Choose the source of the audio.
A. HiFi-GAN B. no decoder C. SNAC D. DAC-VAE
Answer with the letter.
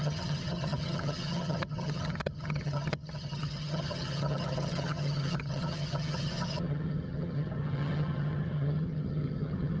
A